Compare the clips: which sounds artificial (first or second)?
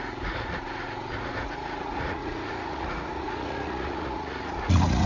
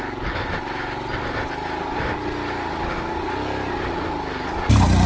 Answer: first